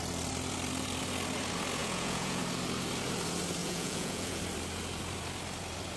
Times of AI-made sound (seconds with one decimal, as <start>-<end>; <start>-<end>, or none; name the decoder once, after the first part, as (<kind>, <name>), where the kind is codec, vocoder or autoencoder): 1.8-2.4 (vocoder, Vocos); 3.6-4.4